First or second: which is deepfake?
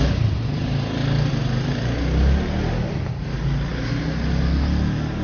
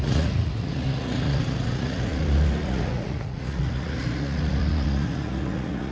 second